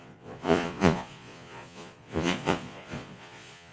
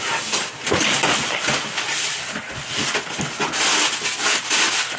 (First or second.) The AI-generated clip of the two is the first